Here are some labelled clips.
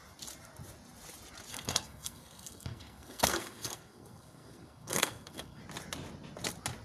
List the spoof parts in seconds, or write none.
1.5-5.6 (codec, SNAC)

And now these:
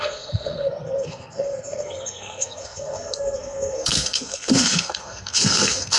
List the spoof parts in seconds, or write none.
0.0-6.0 (codec, SNAC)

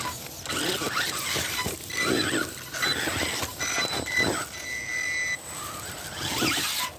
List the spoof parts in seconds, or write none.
none

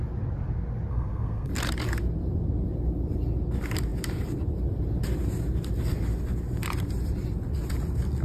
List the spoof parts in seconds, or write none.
0.9-1.5 (codec, SNAC)

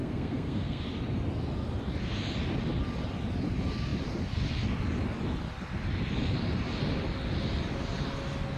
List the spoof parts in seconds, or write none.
0.0-0.8 (codec, SNAC)

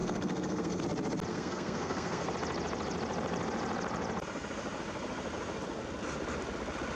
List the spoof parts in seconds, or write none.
0.0-0.8 (codec, SNAC); 1.3-2.3